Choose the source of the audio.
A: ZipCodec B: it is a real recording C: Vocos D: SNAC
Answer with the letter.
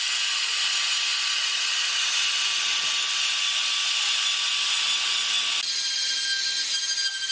B